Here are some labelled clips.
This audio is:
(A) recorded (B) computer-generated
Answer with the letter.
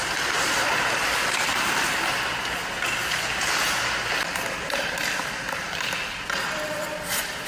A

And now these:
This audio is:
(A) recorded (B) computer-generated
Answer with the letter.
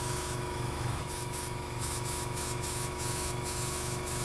B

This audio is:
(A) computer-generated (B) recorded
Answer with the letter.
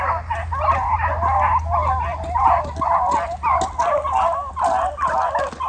B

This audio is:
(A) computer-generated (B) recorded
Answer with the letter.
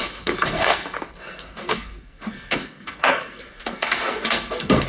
A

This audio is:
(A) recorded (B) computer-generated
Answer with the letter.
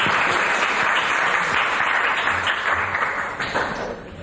B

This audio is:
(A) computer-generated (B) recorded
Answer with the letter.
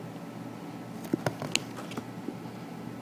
B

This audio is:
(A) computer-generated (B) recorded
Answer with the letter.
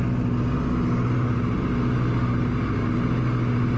B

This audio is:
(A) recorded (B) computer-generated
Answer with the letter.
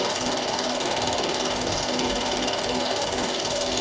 B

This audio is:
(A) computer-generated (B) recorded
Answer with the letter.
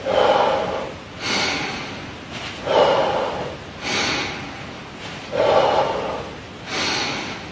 B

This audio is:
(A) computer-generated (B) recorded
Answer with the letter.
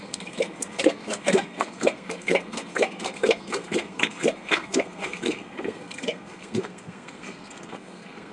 A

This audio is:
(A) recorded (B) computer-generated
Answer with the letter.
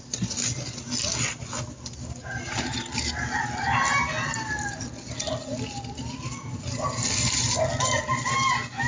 A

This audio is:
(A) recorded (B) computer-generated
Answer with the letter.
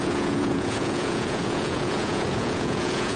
B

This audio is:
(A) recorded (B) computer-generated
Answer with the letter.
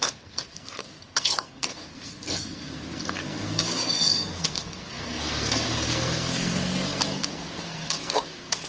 B